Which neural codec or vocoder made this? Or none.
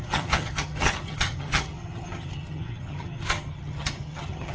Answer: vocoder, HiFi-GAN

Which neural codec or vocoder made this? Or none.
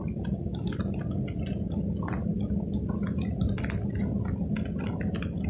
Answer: none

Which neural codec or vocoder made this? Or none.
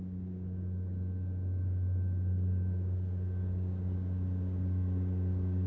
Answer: codec, DAC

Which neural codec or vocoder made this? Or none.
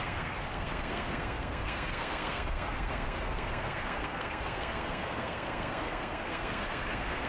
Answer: codec, SNAC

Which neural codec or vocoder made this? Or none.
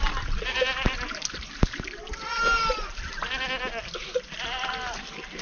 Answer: none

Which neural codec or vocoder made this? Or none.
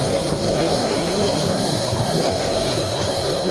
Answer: codec, SNAC